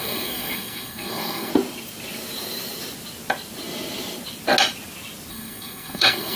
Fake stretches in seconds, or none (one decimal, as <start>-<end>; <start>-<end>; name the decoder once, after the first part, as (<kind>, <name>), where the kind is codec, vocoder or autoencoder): 0.0-1.5 (codec, SNAC); 5.3-6.4